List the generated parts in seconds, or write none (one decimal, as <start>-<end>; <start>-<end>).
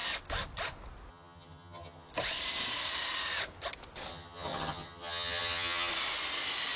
1.1-2.1; 4.1-5.9